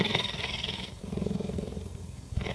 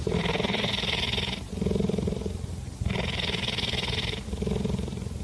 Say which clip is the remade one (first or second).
first